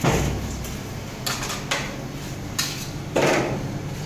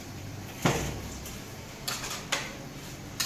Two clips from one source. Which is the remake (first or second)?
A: second